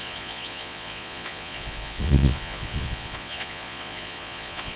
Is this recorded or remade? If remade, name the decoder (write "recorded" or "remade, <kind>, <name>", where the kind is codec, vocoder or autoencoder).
remade, vocoder, Vocos